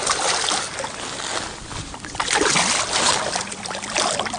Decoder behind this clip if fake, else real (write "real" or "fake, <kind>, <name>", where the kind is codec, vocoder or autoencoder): real